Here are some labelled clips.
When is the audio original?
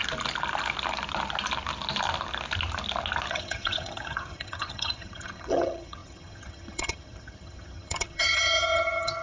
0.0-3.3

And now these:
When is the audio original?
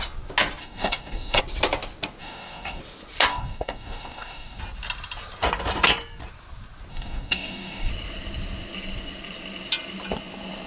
0.0-0.6; 1.4-2.2; 2.8-3.3; 4.6-6.9; 7.9-10.7